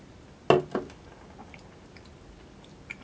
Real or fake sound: real